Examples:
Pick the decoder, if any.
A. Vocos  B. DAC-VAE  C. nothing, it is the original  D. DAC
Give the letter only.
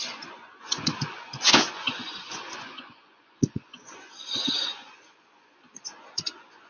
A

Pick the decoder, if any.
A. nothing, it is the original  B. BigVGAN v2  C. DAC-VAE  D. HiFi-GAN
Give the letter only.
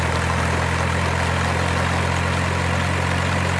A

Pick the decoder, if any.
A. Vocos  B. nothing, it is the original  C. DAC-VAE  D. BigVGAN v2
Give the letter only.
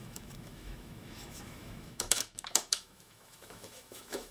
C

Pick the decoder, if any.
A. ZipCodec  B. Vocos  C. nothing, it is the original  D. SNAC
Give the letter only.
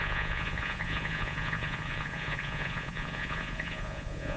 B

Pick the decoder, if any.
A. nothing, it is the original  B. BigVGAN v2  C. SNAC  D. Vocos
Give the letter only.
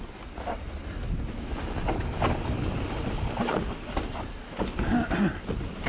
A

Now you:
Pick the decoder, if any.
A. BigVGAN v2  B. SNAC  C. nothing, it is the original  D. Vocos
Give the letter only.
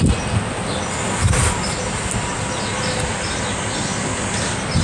C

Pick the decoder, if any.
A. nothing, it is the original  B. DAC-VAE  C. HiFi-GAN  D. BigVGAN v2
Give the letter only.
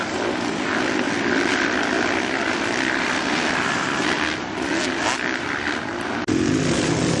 A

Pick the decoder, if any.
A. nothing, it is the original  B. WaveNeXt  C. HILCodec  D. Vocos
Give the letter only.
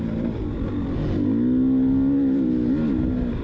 A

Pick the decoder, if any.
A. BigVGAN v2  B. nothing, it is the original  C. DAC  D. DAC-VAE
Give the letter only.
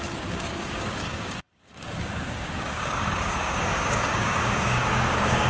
C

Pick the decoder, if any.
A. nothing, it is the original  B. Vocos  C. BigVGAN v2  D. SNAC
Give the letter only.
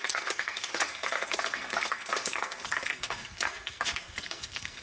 D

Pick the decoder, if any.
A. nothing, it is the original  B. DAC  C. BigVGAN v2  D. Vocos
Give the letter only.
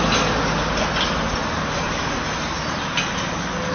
A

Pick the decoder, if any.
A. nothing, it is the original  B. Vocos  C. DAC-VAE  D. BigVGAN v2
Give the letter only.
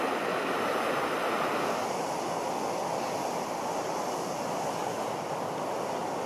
A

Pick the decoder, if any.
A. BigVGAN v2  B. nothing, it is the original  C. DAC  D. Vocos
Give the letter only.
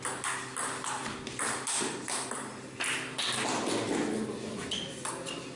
B